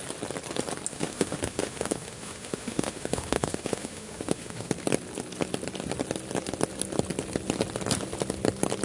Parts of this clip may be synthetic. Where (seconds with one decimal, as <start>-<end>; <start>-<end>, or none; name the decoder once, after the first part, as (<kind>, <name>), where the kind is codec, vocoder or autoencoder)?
0.9-4.7 (autoencoder, DAC-VAE)